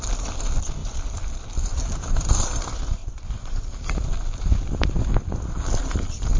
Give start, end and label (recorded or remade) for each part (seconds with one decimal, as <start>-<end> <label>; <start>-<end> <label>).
0.0-3.0 recorded; 3.0-3.6 remade; 3.6-6.4 recorded